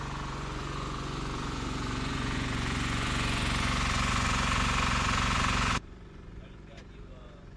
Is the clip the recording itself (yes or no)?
no